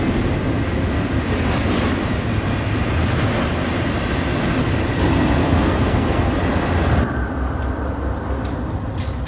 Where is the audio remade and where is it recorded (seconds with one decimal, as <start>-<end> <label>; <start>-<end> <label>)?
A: 0.0-5.4 recorded; 5.4-6.3 remade; 6.3-9.3 recorded